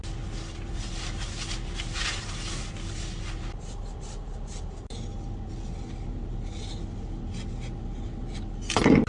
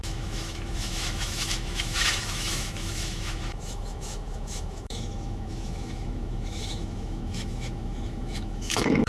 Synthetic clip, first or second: second